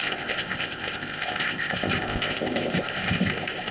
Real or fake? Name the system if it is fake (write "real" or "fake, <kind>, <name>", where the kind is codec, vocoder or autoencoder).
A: fake, codec, ZipCodec